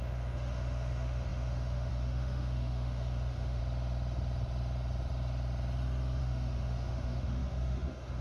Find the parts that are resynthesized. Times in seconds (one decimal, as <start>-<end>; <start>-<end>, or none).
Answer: 0.0-3.6; 6.2-8.2